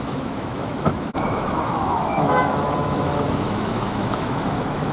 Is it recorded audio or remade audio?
remade